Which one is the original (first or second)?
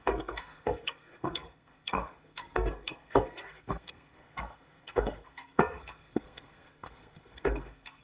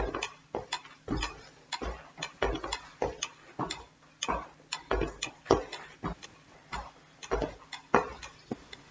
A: second